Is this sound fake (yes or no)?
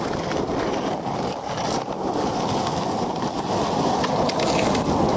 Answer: no